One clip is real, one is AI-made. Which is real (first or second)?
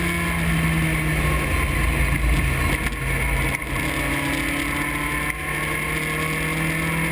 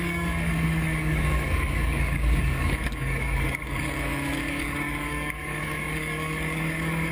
first